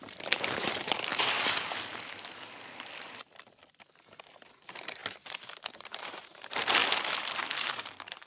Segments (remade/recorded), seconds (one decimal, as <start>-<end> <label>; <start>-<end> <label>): 0.0-1.1 remade; 1.1-4.6 recorded; 4.6-5.0 remade; 5.0-5.7 recorded; 5.7-6.8 remade; 6.8-7.3 recorded; 7.3-8.3 remade